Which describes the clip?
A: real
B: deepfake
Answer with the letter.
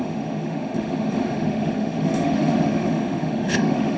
B